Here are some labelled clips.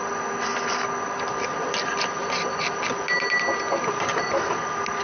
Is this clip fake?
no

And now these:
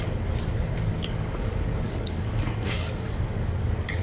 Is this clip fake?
yes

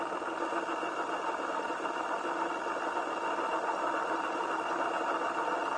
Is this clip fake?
no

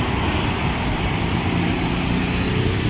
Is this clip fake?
no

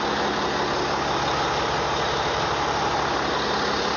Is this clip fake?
no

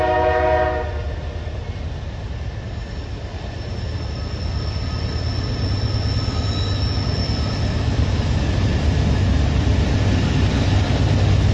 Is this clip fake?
no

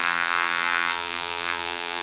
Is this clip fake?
yes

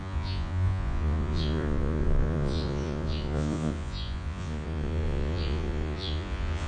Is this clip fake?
yes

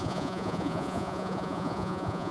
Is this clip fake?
yes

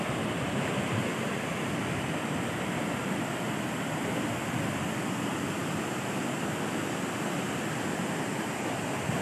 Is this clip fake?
no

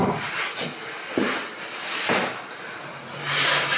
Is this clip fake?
no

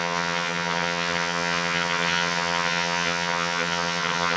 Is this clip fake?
yes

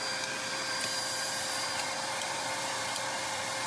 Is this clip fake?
yes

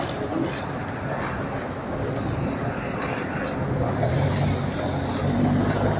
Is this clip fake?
no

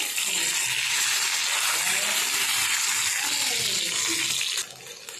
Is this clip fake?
no